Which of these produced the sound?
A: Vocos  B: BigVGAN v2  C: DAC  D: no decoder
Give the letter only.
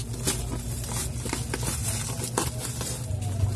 D